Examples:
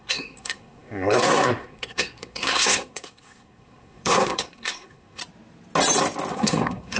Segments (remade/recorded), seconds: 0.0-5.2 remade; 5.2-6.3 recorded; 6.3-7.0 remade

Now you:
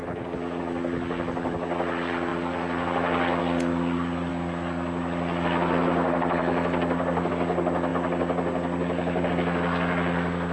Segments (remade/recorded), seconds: 0.0-10.5 recorded

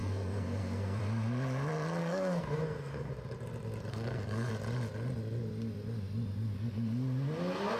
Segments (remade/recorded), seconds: 0.0-1.0 remade; 1.0-2.0 recorded; 2.0-3.1 remade; 3.1-3.9 recorded; 3.9-4.5 remade; 4.5-7.8 recorded